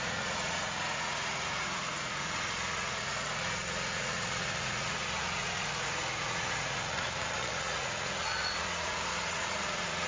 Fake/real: fake